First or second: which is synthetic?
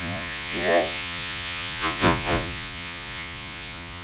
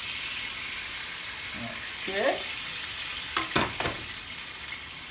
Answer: first